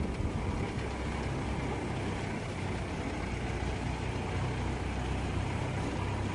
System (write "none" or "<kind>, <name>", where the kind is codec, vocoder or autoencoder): none